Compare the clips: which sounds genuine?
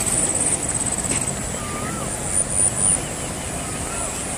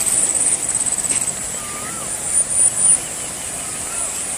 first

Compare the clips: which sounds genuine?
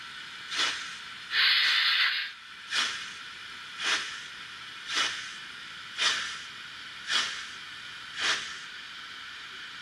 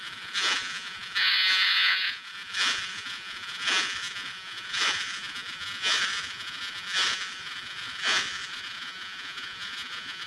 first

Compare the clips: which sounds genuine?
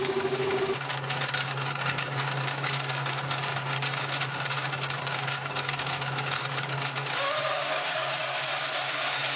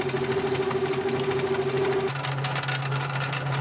second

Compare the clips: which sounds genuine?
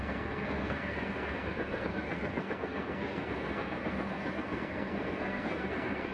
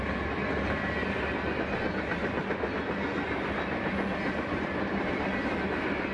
second